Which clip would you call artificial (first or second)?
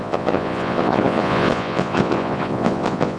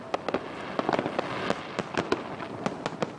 first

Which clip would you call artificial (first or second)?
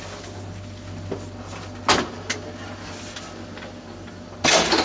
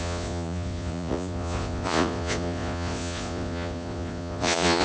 second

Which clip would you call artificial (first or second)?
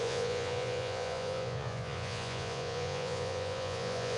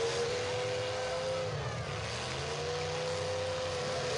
first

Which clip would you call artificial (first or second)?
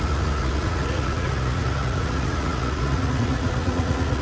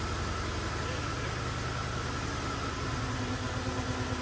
first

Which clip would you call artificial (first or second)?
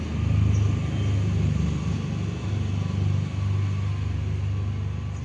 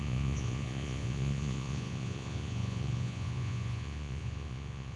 second